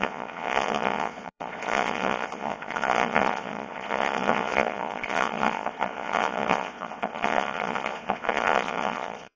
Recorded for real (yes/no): no